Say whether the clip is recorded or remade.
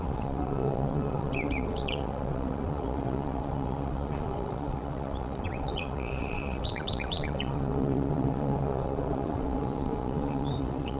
remade